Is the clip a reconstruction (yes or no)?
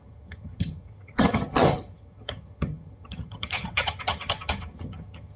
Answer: yes